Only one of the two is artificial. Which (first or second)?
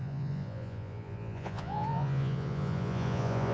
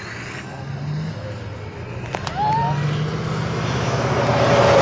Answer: first